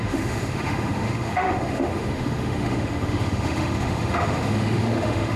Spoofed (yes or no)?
yes